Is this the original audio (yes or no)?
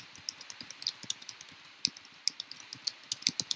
yes